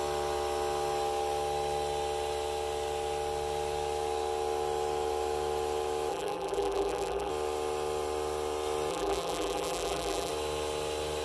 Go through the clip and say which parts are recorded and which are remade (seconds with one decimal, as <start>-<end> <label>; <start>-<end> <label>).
0.0-6.1 recorded; 6.1-7.3 remade; 7.3-8.9 recorded; 8.9-10.3 remade; 10.3-11.2 recorded